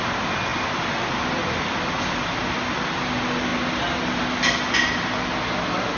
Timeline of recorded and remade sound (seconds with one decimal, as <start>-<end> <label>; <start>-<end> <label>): 0.0-6.0 recorded